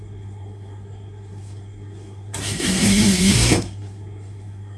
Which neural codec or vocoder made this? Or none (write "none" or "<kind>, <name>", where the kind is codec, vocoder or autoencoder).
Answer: codec, SNAC